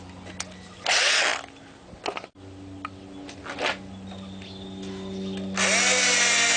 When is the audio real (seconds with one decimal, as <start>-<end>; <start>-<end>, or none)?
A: 0.0-6.6